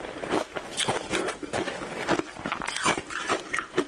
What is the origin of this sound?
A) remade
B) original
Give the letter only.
B